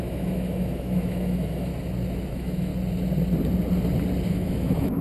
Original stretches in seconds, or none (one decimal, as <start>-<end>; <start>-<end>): 1.7-2.3; 2.7-4.3